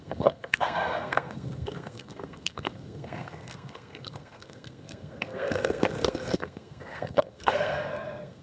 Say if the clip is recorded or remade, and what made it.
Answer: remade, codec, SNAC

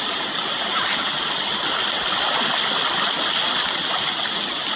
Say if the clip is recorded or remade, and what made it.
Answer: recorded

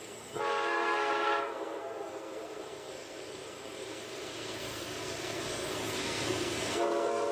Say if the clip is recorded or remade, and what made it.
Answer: remade, codec, SNAC